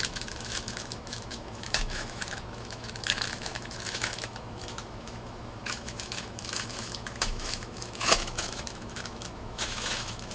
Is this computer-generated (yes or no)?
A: yes